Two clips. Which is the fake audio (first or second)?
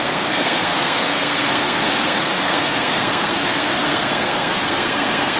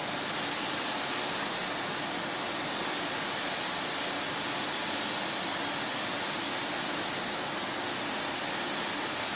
first